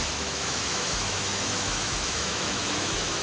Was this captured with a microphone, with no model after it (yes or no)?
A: no